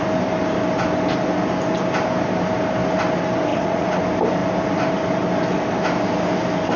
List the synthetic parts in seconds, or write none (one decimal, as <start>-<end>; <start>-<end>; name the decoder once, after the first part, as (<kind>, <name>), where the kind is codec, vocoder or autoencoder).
3.5-4.0 (vocoder, Vocos)